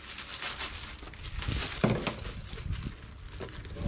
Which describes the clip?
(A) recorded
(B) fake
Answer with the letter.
A